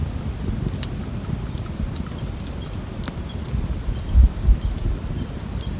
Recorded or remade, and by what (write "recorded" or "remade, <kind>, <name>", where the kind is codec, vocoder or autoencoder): recorded